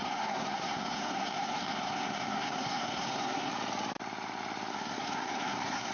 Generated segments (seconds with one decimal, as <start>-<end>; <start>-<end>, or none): 0.0-3.5; 4.7-5.9